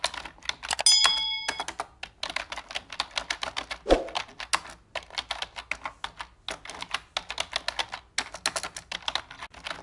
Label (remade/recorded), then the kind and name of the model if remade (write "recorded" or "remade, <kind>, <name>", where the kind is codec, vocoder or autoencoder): recorded